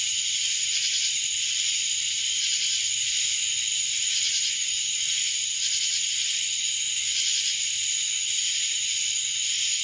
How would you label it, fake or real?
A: fake